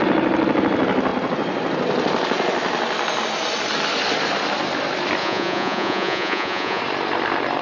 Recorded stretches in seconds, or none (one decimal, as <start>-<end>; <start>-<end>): 0.0-5.2; 6.8-7.6